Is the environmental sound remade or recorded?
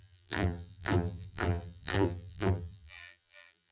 remade